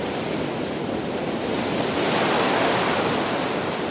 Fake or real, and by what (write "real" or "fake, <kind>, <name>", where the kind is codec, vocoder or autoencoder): real